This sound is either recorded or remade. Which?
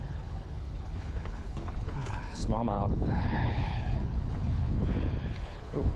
remade